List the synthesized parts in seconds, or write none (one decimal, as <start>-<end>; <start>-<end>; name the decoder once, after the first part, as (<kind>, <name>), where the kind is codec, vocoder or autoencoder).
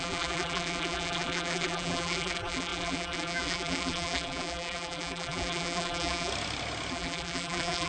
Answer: 0.0-6.3 (vocoder, BigVGAN v2); 6.9-7.9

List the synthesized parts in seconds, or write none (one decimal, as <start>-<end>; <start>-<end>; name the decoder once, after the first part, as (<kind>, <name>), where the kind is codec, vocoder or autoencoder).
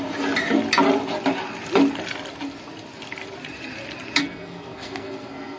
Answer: 4.2-5.6 (codec, SNAC)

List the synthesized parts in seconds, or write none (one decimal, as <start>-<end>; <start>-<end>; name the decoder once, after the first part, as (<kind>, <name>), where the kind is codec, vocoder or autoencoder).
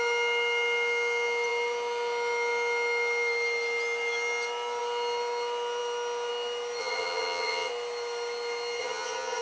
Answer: 6.8-7.7 (vocoder, HiFi-GAN); 8.8-9.4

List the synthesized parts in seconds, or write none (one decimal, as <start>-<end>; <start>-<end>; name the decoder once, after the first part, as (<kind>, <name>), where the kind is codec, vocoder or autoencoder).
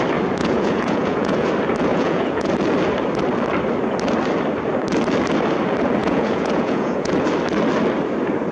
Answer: 0.4-1.5 (vocoder, Vocos); 1.9-2.5; 6.0-7.1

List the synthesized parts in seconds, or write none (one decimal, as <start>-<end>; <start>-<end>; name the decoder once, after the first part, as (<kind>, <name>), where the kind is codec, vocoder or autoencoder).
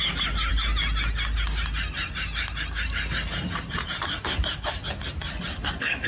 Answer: none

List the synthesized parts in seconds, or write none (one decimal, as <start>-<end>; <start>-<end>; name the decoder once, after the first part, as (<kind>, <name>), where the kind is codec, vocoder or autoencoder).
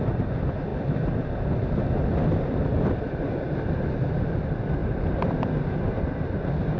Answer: none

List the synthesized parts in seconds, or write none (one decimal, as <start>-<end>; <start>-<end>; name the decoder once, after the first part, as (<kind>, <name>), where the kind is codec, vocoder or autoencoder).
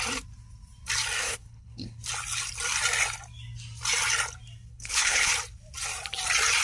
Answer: 1.2-2.0 (codec, HILCodec); 4.7-5.3